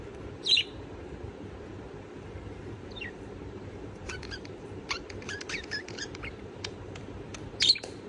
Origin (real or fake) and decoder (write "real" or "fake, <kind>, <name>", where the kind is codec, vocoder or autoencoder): fake, vocoder, BigVGAN v2